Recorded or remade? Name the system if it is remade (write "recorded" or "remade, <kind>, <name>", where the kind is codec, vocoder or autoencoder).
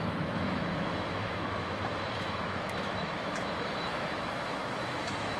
remade, autoencoder, DAC-VAE